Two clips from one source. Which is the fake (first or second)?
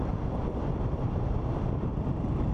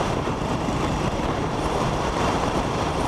second